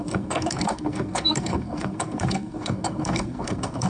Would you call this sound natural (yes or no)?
no